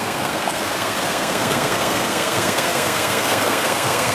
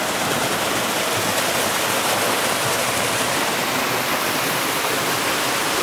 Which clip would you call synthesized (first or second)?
first